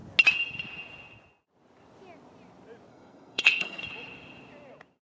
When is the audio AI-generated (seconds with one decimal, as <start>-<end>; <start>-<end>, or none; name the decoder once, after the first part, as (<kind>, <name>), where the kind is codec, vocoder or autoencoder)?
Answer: 2.9-3.8 (codec, SNAC)